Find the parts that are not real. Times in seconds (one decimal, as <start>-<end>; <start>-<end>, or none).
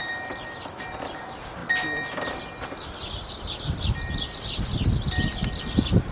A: none